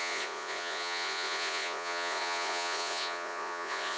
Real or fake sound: fake